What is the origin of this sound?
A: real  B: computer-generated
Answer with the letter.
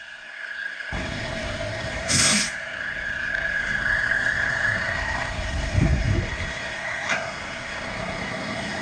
B